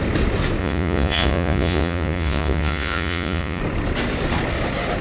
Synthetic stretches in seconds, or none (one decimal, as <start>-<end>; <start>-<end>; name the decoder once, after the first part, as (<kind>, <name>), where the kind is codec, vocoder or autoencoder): 0.6-3.6 (vocoder, Vocos)